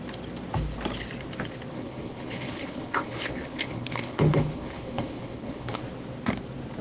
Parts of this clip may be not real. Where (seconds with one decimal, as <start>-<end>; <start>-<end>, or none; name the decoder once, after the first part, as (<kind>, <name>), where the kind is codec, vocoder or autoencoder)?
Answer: 1.7-5.8 (codec, HILCodec)